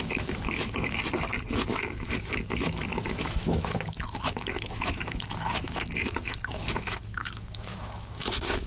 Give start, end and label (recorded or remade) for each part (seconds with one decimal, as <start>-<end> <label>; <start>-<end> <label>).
0.0-1.0 remade; 1.0-1.5 recorded; 1.5-8.7 remade